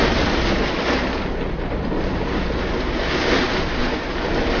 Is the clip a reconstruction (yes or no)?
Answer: no